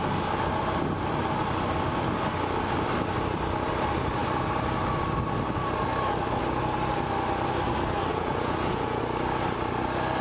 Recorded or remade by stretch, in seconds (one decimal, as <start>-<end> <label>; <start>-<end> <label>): 0.0-8.1 recorded; 8.1-9.0 remade; 9.0-10.2 recorded